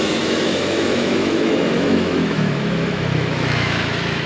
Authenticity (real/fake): fake